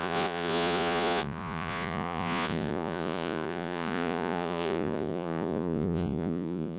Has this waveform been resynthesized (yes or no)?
yes